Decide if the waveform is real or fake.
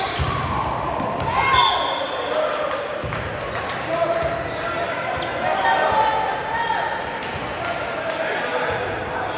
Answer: real